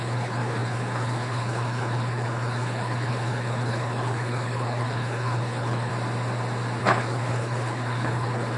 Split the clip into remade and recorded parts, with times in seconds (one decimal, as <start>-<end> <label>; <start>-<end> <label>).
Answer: 0.0-5.9 remade; 5.9-6.8 recorded; 6.8-8.6 remade